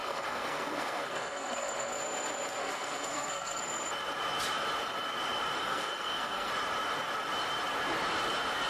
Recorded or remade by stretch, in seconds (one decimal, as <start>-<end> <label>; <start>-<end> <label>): 0.0-2.0 remade; 2.0-2.6 recorded; 2.6-3.6 remade; 3.6-5.6 recorded; 5.6-6.5 remade; 6.5-8.7 recorded